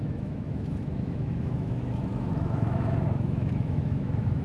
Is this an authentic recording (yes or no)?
no